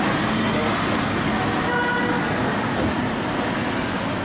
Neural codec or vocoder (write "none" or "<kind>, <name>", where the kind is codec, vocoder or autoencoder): none